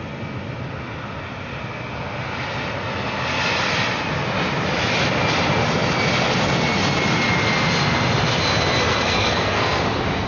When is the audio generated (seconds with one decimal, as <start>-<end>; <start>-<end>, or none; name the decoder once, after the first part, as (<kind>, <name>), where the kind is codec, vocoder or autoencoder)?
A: 8.9-9.8 (codec, SNAC)